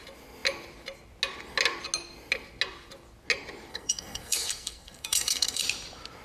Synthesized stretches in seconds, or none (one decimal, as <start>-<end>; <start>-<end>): 3.7-5.6